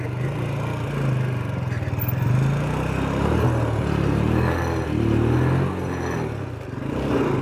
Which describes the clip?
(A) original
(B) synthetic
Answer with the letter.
A